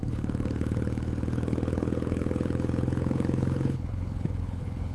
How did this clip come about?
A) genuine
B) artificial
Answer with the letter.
B